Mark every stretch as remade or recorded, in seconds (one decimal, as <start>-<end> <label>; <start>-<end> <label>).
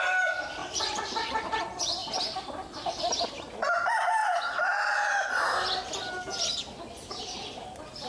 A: 0.0-0.6 recorded; 0.6-1.4 remade; 1.4-4.2 recorded; 4.2-5.3 remade; 5.3-8.1 recorded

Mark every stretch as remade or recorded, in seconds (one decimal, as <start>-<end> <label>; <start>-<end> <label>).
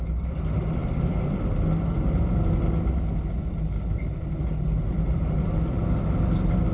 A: 0.0-6.7 recorded